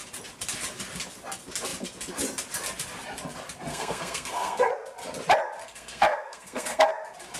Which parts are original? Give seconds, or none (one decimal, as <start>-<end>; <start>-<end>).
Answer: 0.0-3.7; 4.7-5.6; 6.9-7.4